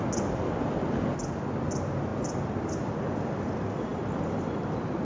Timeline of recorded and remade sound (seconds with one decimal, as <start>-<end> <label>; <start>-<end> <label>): 0.0-5.0 recorded